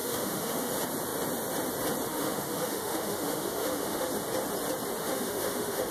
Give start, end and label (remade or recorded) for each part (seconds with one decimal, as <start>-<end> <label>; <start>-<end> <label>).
0.0-0.7 remade; 0.7-2.1 recorded; 2.1-4.1 remade; 4.1-5.0 recorded; 5.0-5.9 remade